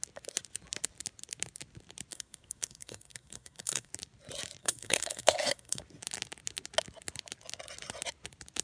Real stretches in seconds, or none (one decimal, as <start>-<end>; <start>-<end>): 0.0-2.1; 3.9-4.6; 5.8-8.6